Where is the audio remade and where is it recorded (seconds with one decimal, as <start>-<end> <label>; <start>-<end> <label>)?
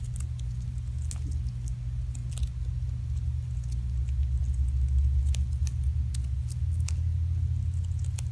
0.0-8.3 recorded